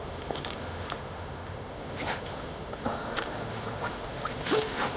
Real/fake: fake